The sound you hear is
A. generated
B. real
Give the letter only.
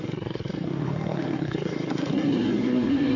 A